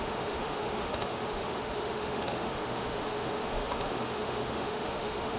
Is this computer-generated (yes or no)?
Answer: yes